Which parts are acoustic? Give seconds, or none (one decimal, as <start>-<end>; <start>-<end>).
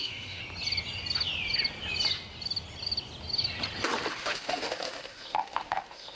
0.4-4.1